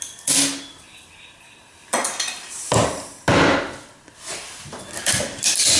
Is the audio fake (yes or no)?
no